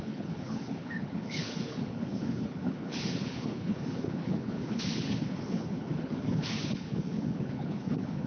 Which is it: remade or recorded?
remade